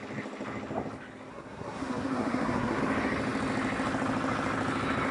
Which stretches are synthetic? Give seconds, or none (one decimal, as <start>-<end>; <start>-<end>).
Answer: 1.3-2.8